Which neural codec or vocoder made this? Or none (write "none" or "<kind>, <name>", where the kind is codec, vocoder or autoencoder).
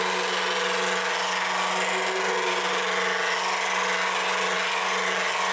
none